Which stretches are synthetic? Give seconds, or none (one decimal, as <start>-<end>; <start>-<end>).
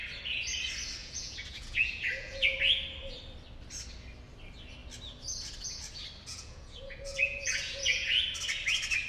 1.0-2.6; 6.3-8.2